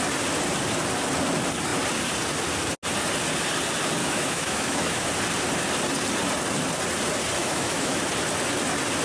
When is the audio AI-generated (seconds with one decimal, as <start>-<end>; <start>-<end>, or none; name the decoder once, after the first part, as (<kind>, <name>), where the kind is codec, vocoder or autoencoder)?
4.0-5.1 (autoencoder, DAC-VAE); 7.4-8.0